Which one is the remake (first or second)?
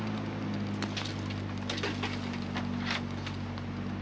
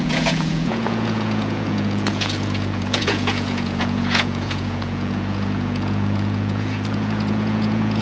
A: second